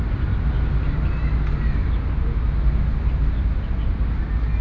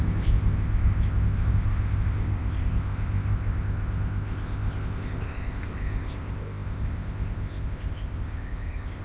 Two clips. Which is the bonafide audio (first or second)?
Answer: first